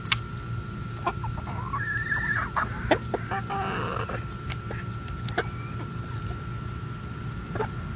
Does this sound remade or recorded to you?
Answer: recorded